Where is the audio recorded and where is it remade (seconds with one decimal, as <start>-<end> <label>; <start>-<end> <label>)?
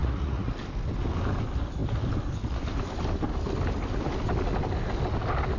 0.0-0.5 remade; 0.5-5.6 recorded